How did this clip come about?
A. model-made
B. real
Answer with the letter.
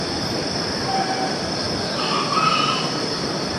A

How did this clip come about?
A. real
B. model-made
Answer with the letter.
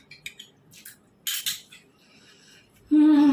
A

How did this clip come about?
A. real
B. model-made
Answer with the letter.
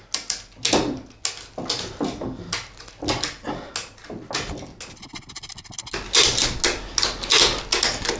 A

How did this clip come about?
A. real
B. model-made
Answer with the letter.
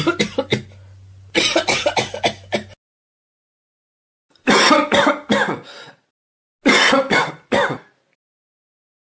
A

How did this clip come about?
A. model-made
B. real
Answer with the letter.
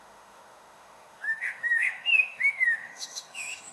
A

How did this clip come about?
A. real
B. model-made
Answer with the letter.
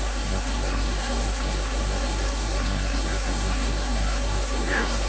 B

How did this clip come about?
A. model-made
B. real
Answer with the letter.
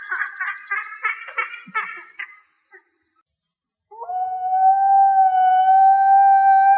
B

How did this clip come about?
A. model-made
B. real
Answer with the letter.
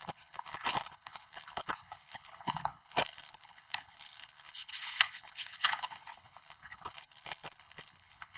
A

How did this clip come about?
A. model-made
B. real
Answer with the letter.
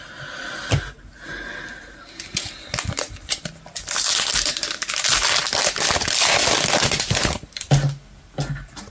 B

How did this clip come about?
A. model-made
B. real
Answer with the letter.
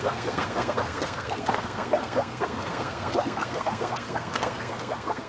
A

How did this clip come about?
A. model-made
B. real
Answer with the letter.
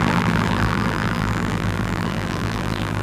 A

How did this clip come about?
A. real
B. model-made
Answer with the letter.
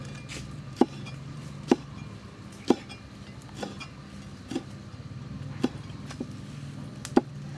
A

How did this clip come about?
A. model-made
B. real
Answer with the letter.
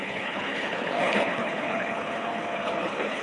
A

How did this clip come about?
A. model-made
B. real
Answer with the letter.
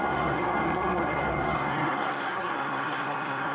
A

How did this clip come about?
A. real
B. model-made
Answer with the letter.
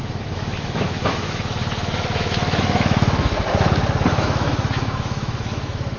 B